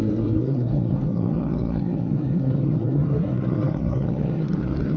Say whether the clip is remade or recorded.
remade